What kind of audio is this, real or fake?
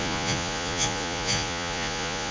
fake